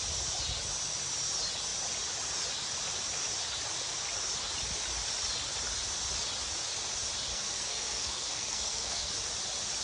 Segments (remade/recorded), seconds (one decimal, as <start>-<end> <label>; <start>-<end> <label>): 0.0-7.3 recorded; 7.3-9.1 remade; 9.1-9.8 recorded